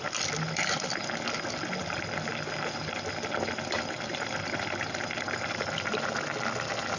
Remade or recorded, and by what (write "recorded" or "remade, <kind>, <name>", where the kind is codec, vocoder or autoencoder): recorded